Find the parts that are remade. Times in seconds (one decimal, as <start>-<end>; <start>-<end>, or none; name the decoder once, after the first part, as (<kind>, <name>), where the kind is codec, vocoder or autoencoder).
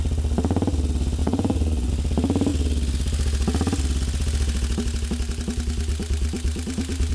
1.2-1.9 (vocoder, Vocos)